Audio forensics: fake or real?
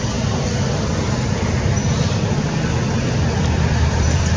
fake